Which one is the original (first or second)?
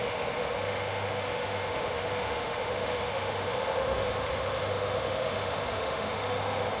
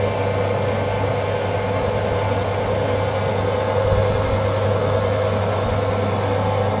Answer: second